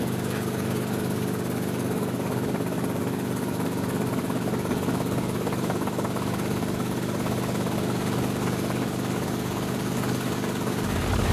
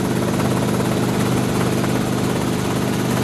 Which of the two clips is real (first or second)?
second